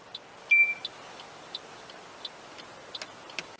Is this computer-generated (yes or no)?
no